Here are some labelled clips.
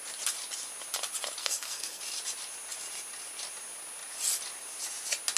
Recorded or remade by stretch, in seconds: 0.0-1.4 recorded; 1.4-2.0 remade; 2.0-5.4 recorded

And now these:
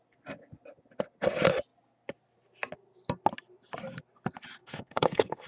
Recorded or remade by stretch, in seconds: 0.0-4.6 recorded; 4.6-5.5 remade

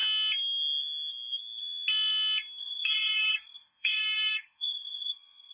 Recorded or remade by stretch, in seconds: 0.0-2.6 recorded; 2.6-5.5 remade